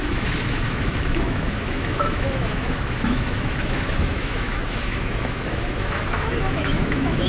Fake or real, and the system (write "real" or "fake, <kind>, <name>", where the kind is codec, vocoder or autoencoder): fake, autoencoder, DAC-VAE